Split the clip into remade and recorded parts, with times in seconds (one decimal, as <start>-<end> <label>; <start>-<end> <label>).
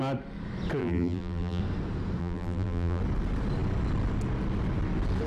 0.0-0.8 recorded; 0.8-1.6 remade; 1.6-2.2 recorded; 2.2-3.0 remade; 3.0-5.3 recorded